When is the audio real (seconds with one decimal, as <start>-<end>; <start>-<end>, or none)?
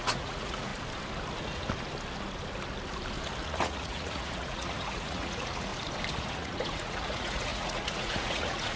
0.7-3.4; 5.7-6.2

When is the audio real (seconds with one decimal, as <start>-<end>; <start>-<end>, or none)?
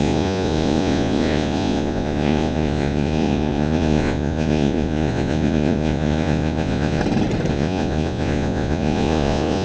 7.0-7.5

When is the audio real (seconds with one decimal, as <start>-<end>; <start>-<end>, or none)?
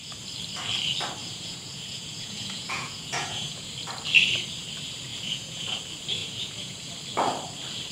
0.0-1.2; 3.7-5.1; 5.8-6.2; 6.9-7.9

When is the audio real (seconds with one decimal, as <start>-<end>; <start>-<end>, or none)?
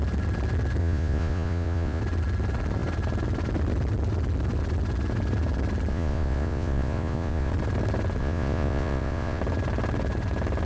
0.0-0.8; 2.0-5.9; 7.5-8.2; 9.4-10.7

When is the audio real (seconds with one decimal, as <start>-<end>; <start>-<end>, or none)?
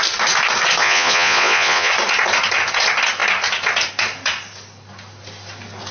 0.0-0.8; 1.9-5.9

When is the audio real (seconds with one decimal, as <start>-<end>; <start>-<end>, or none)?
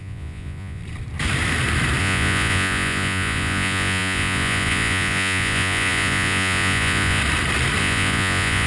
0.8-2.0; 7.2-7.8